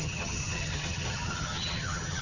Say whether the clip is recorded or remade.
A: remade